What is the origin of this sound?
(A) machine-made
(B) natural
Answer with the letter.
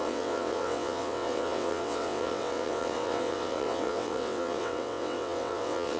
A